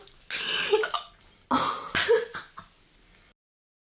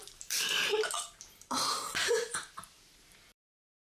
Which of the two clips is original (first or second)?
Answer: first